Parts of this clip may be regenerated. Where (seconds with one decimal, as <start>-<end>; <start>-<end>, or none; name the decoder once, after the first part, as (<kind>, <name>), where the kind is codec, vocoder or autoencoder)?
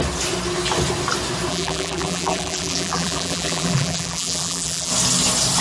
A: 1.5-4.9 (vocoder, BigVGAN v2)